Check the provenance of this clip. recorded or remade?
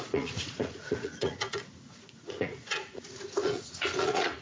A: remade